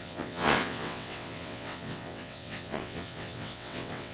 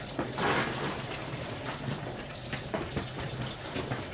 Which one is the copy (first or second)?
first